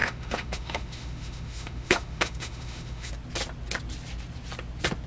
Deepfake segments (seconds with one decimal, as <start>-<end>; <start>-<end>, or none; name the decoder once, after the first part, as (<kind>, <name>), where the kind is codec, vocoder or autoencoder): 0.0-3.1 (autoencoder, DAC-VAE)